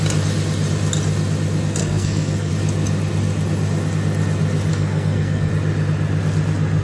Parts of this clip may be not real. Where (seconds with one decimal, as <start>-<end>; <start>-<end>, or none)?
1.8-2.5; 4.7-5.5